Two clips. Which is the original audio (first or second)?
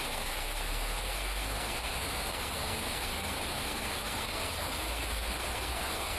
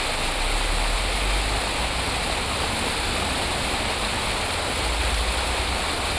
second